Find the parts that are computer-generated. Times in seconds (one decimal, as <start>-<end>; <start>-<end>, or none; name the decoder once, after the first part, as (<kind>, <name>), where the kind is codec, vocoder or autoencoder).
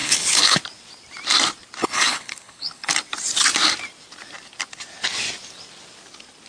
0.0-0.6 (codec, HILCodec); 1.8-2.9